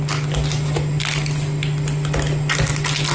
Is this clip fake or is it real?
real